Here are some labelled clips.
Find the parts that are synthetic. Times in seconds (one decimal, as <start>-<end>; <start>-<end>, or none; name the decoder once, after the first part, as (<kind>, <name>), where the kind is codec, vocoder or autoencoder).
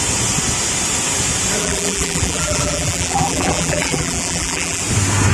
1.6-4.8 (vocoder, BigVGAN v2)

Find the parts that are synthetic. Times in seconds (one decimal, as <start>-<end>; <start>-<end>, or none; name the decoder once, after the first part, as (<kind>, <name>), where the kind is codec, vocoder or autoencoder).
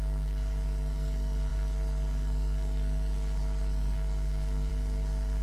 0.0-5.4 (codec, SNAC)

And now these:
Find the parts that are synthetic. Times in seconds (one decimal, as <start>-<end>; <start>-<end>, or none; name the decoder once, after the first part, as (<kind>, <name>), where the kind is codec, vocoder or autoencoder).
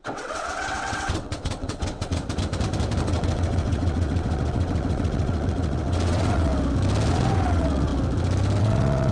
0.0-2.2 (vocoder, WaveNeXt); 3.0-6.5; 7.1-7.9; 8.6-9.1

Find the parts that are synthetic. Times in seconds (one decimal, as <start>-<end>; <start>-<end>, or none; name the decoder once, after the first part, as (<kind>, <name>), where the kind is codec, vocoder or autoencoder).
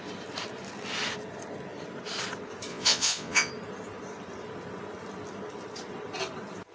2.7-3.5 (vocoder, Vocos)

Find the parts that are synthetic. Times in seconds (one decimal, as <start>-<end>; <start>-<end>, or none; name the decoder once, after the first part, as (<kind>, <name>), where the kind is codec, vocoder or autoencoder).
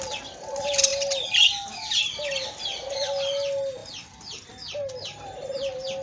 3.8-4.5 (vocoder, BigVGAN v2)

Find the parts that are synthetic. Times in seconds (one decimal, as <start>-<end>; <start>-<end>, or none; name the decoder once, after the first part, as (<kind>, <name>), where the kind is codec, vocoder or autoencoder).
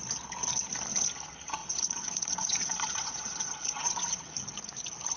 1.6-4.3 (vocoder, Vocos)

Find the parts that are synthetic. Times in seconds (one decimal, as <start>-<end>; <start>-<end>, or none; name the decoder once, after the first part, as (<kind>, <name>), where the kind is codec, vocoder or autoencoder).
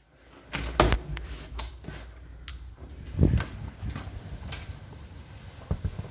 1.1-1.7 (autoencoder, DAC-VAE)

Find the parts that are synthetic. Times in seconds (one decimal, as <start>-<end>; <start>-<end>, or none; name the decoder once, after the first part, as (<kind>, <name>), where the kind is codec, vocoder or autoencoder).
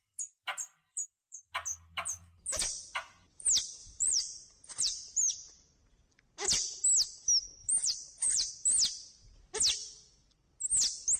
0.9-1.5 (vocoder, BigVGAN v2); 3.8-5.3; 7.6-8.5